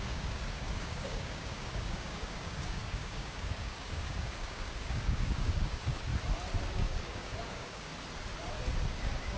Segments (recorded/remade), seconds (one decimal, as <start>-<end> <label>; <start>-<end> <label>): 0.0-6.1 remade; 6.1-6.6 recorded; 6.6-7.9 remade; 7.9-8.9 recorded; 8.9-9.4 remade